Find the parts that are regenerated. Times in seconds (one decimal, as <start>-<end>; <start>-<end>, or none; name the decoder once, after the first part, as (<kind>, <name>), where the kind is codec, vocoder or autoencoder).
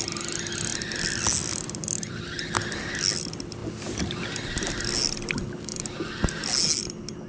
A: none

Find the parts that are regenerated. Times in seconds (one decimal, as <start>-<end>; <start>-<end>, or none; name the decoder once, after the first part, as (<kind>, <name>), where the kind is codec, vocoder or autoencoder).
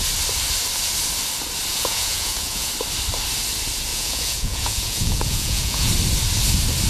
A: 1.7-2.7 (vocoder, Vocos); 3.9-5.9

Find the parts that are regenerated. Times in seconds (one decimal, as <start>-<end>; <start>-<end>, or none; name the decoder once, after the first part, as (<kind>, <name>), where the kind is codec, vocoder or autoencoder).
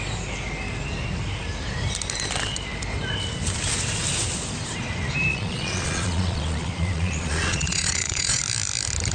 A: 5.3-8.4 (vocoder, Vocos)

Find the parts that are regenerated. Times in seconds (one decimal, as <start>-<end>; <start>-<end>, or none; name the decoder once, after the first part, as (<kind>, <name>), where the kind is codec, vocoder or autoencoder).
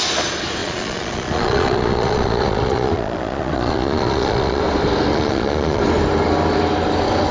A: 0.6-4.6 (vocoder, Vocos); 5.1-5.8